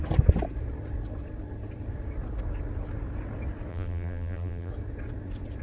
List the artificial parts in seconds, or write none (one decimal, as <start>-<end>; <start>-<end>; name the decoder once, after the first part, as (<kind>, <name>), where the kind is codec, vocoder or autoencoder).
3.7-4.7 (vocoder, BigVGAN v2)

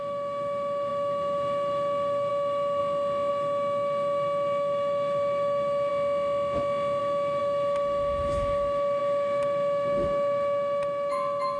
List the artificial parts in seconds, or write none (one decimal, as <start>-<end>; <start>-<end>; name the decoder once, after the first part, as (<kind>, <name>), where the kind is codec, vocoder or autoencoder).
0.0-2.8 (autoencoder, DAC-VAE); 3.3-5.9; 7.0-11.6